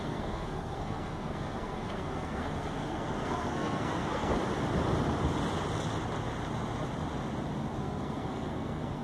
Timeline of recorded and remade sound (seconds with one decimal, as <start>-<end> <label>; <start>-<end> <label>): 0.0-4.3 remade; 4.3-7.8 recorded; 7.8-9.0 remade